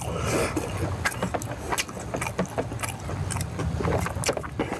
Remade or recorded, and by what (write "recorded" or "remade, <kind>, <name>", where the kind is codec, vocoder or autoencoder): recorded